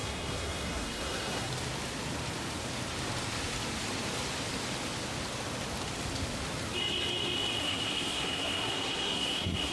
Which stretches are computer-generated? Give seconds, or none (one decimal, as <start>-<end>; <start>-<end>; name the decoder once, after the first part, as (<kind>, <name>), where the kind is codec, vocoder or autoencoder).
0.0-1.5 (codec, SNAC); 7.6-9.7